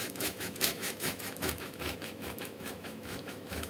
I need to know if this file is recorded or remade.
remade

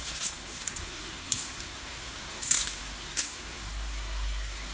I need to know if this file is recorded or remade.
remade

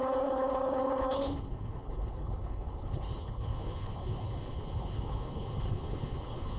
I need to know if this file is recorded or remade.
remade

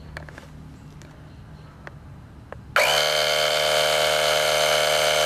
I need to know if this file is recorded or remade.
recorded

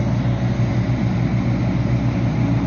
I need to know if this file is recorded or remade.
recorded